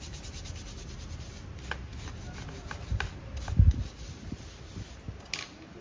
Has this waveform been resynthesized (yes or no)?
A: no